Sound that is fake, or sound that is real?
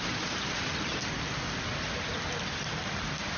real